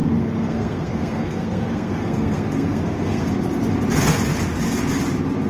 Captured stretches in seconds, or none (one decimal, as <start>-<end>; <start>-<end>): 3.3-5.5